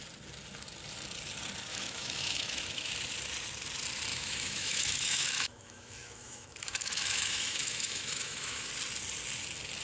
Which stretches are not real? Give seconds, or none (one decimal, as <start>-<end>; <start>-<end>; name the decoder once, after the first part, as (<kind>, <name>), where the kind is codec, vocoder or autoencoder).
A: 1.7-2.9 (autoencoder, DAC-VAE); 4.1-8.7